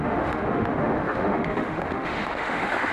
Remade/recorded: remade